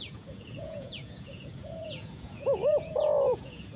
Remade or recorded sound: remade